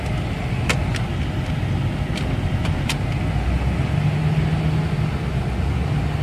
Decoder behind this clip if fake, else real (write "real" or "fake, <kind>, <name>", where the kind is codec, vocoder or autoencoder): real